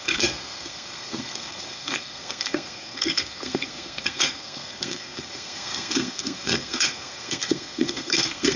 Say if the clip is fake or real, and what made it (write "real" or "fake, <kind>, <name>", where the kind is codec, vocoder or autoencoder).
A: fake, codec, SNAC